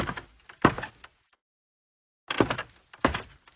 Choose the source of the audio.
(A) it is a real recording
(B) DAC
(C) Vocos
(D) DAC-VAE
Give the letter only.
A